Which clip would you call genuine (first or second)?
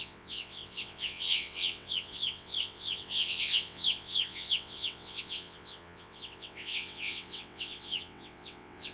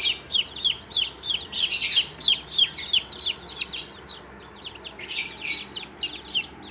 second